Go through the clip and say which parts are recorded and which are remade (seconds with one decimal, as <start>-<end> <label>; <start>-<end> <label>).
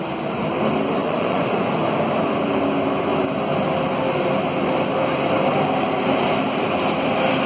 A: 0.0-1.0 recorded; 1.0-1.7 remade; 1.7-7.5 recorded